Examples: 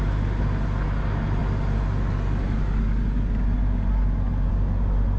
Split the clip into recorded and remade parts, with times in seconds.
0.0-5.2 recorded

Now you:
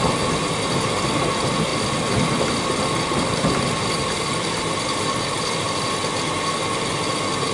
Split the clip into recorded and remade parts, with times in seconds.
0.0-1.7 recorded; 1.7-6.2 remade; 6.2-7.5 recorded

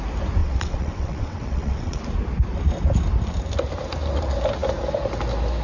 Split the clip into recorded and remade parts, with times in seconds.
0.0-0.4 recorded; 0.4-2.0 remade; 2.0-5.6 recorded

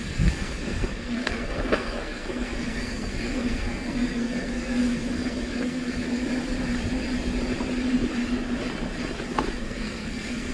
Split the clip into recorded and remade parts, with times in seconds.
0.0-6.1 remade; 6.1-9.6 recorded; 9.6-10.5 remade

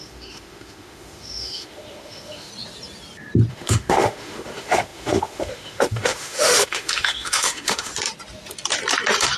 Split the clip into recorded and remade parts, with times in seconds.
0.0-2.5 remade; 2.5-3.5 recorded; 3.5-7.9 remade; 7.9-9.4 recorded